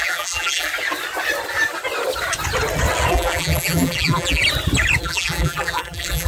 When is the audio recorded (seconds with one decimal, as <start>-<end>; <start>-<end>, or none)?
0.7-3.1; 4.4-5.0